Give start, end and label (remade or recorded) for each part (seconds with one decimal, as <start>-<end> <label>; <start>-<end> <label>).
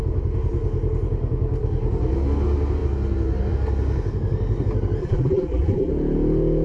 0.0-5.0 recorded; 5.0-5.9 remade; 5.9-6.6 recorded